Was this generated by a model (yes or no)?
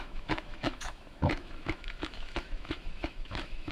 yes